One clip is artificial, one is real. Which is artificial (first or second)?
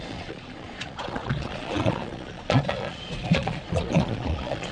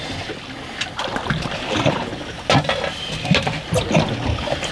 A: first